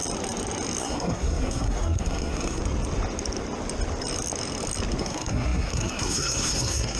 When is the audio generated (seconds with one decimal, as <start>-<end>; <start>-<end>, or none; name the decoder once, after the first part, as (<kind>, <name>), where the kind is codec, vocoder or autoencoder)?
0.8-2.6 (codec, SNAC); 5.0-7.0